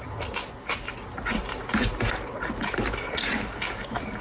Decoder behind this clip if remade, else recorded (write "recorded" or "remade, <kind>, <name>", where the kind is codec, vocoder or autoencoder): recorded